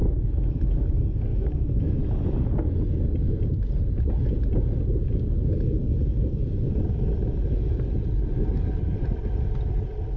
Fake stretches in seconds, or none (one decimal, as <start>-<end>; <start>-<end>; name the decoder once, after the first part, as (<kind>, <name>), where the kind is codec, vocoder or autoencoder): 0.0-0.9 (autoencoder, DAC-VAE); 1.3-2.0